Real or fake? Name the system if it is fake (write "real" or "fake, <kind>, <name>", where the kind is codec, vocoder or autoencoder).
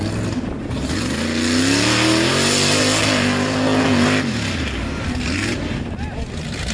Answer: real